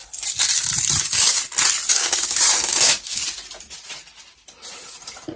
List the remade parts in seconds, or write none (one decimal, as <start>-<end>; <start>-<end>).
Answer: 1.0-1.4; 1.9-3.2

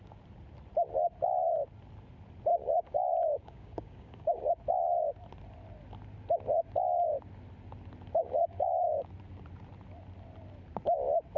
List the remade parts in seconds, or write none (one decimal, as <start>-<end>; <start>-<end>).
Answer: 2.5-4.5; 8.2-8.8

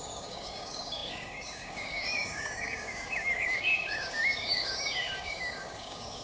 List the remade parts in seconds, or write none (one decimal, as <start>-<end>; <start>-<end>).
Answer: 0.0-6.2

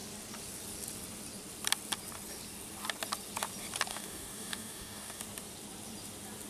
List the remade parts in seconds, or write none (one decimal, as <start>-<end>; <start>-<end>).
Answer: 3.9-5.2

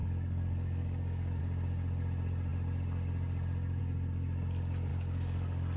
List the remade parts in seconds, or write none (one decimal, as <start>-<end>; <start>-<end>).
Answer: 0.0-1.4; 4.9-5.8

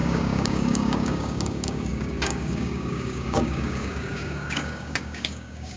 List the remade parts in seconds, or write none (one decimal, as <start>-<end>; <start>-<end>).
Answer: 0.0-5.8